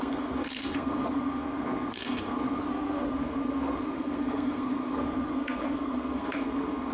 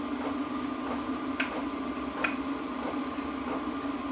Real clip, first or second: second